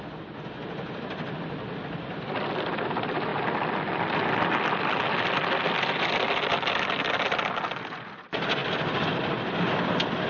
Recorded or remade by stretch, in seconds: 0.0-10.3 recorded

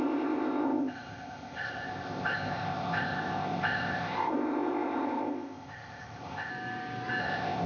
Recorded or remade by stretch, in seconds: 0.0-6.5 remade; 6.5-7.2 recorded; 7.2-7.7 remade

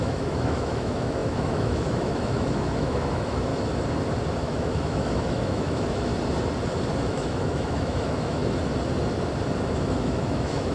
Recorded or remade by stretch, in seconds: 0.0-3.5 remade; 3.5-4.3 recorded; 4.3-6.1 remade; 6.1-7.1 recorded; 7.1-8.4 remade; 8.4-9.7 recorded; 9.7-10.7 remade

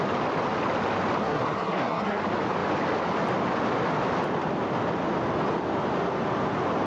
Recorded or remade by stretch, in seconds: 0.0-1.2 recorded; 1.2-2.2 remade; 2.2-6.9 recorded

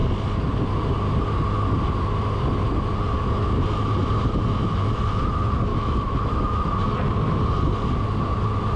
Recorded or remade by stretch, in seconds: 0.0-5.7 recorded; 5.7-6.7 remade; 6.7-8.8 recorded

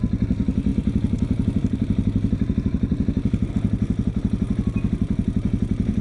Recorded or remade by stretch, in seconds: 0.0-0.7 recorded; 0.7-3.5 remade; 3.5-6.0 recorded